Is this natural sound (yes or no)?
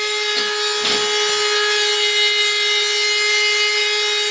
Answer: yes